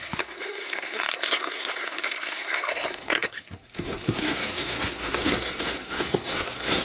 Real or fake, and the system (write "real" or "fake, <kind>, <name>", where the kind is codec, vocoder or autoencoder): fake, codec, SNAC